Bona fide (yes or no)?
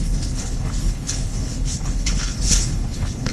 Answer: no